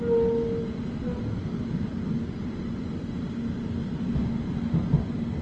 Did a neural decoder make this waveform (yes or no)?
no